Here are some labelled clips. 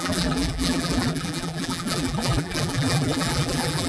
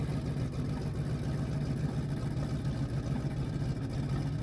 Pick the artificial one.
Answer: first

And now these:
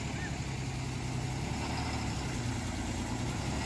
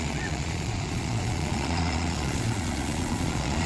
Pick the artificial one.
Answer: second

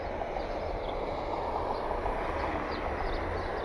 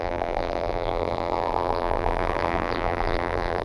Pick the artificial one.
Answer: second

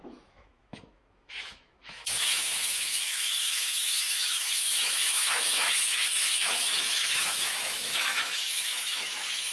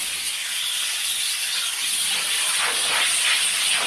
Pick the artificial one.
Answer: first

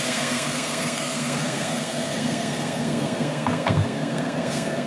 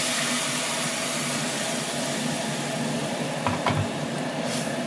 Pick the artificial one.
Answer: first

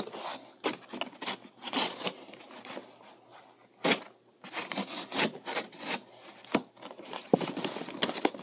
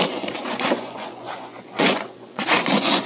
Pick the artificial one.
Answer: second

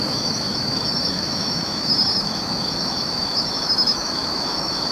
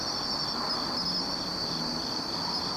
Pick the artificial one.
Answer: first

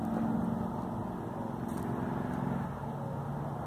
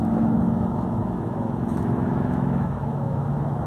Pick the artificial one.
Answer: second